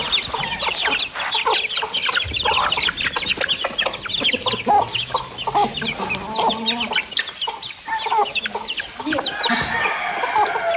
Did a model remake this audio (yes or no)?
no